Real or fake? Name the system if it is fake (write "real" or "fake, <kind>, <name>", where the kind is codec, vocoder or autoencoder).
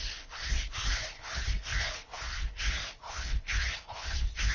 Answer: fake, codec, HILCodec